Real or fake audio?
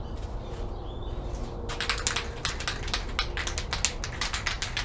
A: real